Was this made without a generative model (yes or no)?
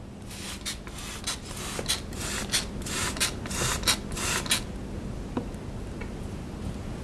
yes